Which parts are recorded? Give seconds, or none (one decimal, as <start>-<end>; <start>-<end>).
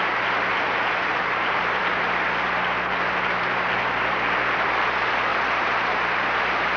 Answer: 0.0-0.5; 1.8-5.3